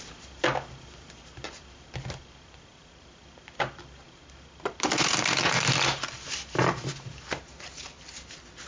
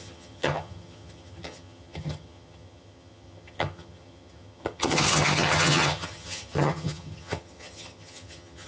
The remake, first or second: second